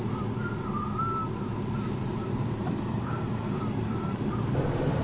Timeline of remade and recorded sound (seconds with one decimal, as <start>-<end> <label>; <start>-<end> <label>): 0.0-2.1 recorded; 2.1-5.0 remade